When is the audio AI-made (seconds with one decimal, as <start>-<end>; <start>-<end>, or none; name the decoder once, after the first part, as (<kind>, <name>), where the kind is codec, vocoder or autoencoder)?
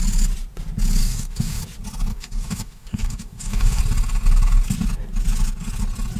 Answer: 1.0-1.6 (codec, DAC); 2.1-3.8